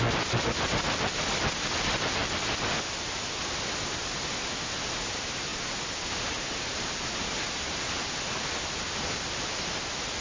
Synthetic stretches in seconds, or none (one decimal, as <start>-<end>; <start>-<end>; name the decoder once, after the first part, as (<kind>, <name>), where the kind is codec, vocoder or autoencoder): none